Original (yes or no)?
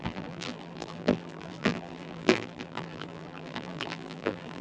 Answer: no